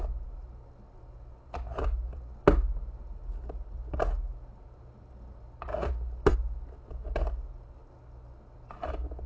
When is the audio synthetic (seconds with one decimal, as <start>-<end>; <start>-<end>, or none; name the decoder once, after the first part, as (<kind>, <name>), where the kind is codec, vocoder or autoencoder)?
none